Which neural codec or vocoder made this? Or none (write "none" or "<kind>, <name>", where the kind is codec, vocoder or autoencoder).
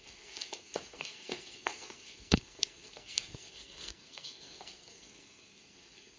codec, SNAC